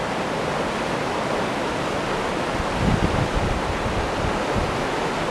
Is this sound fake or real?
real